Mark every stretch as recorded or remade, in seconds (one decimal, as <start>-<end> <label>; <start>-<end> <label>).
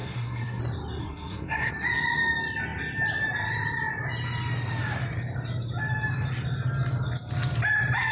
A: 0.0-0.6 remade; 0.6-1.0 recorded; 1.0-1.7 remade; 1.7-8.1 recorded